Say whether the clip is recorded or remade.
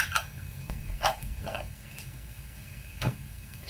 remade